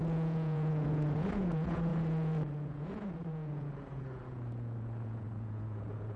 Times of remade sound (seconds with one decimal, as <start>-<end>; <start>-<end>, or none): 0.0-6.2